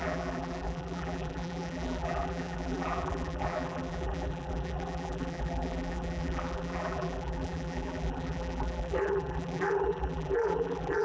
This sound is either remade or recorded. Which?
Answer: remade